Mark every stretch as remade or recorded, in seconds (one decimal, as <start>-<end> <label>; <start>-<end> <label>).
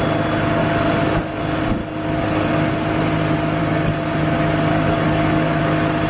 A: 0.0-0.6 recorded; 0.6-1.4 remade; 1.4-1.8 recorded; 1.8-2.7 remade; 2.7-3.6 recorded; 3.6-4.2 remade; 4.2-4.7 recorded; 4.7-5.6 remade; 5.6-6.1 recorded